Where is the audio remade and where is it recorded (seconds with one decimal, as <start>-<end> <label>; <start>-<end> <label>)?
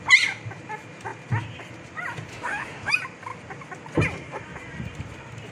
0.0-2.3 recorded; 2.3-2.9 remade; 2.9-5.5 recorded